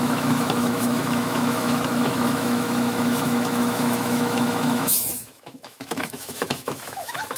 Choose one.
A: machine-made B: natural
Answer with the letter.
A